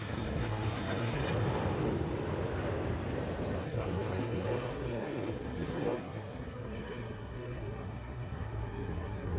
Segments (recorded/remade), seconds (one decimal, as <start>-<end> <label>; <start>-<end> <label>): 0.0-1.2 remade; 1.2-3.6 recorded; 3.6-9.4 remade